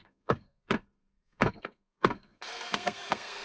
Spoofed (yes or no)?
yes